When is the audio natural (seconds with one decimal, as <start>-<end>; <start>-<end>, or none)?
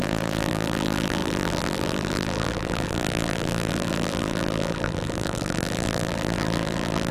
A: none